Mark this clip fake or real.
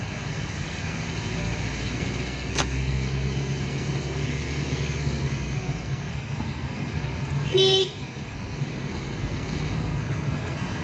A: fake